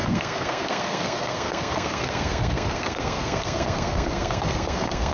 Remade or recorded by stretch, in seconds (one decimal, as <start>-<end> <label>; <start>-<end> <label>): 0.0-5.1 remade